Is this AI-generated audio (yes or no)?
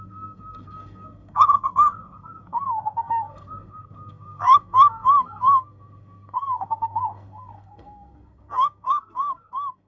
yes